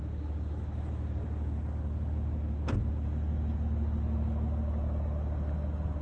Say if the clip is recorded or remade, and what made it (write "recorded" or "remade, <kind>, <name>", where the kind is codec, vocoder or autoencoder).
recorded